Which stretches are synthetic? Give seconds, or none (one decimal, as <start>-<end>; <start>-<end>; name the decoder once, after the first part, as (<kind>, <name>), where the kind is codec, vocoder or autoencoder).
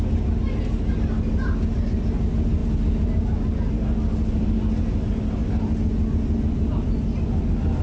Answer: none